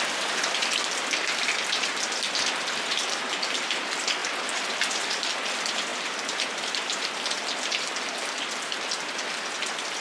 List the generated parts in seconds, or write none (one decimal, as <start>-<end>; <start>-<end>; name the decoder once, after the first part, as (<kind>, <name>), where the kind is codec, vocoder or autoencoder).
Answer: none